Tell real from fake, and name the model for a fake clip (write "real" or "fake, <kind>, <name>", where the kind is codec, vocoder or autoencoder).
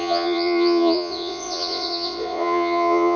fake, vocoder, Vocos